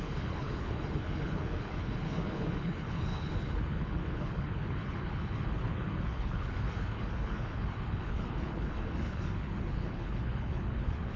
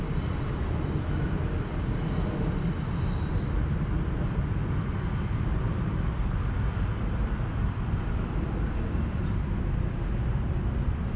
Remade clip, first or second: first